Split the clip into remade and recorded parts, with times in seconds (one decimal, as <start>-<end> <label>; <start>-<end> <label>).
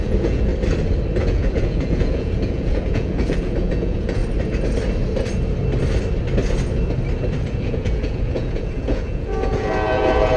0.0-0.5 remade; 0.5-1.2 recorded; 1.2-4.2 remade; 4.2-7.4 recorded; 7.4-10.4 remade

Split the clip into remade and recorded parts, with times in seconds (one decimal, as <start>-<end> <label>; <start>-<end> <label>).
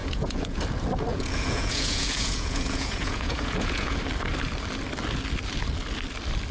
0.0-0.6 remade; 0.6-1.1 recorded; 1.1-4.0 remade; 4.0-6.5 recorded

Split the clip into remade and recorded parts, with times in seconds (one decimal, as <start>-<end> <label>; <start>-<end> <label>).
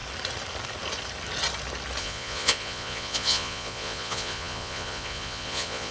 0.0-2.0 recorded; 2.0-5.9 remade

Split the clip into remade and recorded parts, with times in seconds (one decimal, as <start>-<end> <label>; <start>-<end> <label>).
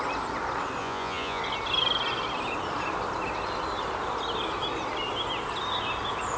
0.0-0.8 recorded; 0.8-1.4 remade; 1.4-6.4 recorded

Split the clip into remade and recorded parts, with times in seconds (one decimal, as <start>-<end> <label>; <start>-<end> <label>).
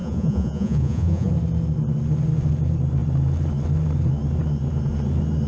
0.0-1.3 remade; 1.3-5.5 recorded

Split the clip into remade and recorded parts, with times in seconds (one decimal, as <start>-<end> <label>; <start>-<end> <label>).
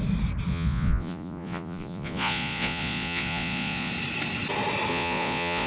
0.0-0.5 recorded; 0.5-3.9 remade; 3.9-4.9 recorded; 4.9-5.7 remade